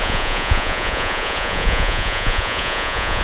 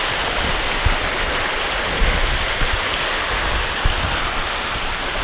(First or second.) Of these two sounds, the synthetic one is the first